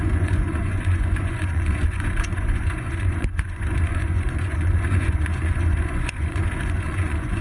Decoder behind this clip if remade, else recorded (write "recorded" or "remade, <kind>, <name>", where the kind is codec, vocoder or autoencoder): remade, vocoder, Vocos